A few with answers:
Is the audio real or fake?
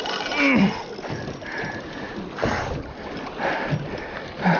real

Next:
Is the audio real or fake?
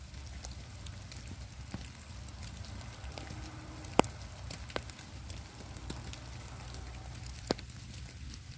real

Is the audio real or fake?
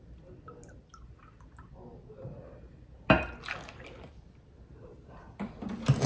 real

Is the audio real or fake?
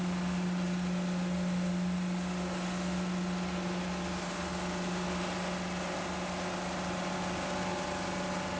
real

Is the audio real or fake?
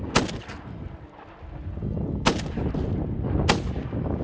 real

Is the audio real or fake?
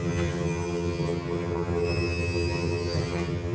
fake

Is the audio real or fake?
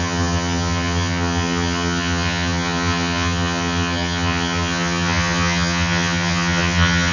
fake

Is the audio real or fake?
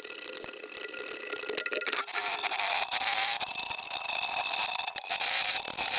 real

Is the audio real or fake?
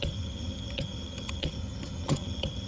fake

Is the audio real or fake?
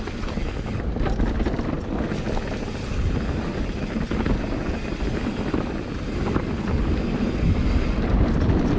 real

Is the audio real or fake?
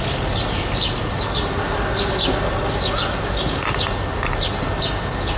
real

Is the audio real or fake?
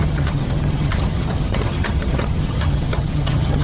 fake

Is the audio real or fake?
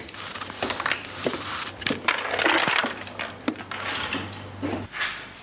real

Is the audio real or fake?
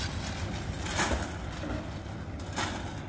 real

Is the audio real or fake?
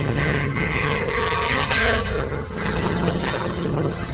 fake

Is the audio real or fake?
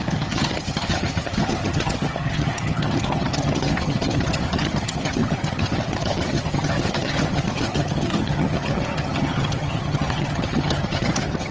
fake